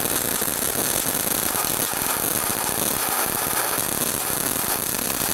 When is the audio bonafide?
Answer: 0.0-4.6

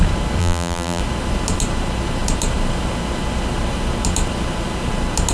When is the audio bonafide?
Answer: 0.0-0.4; 1.0-5.3

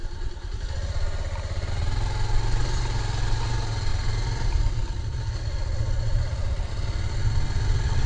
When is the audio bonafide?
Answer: 0.0-8.1

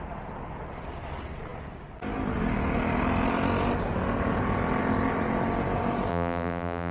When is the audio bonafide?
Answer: 0.0-6.1

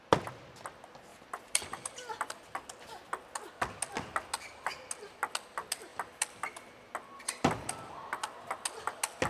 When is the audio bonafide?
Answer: 0.0-1.1; 2.3-5.9; 7.9-9.3

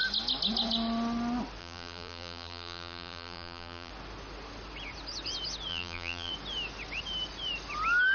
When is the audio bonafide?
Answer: 0.0-1.6; 3.9-5.7; 6.3-8.1

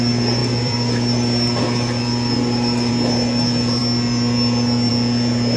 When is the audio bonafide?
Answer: 0.0-0.4; 2.9-5.6

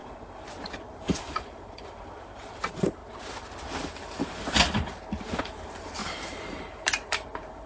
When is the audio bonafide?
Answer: 0.0-1.2; 3.0-5.4